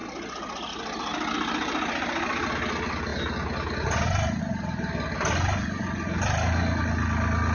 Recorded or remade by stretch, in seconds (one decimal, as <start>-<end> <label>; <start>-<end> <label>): 0.0-7.5 recorded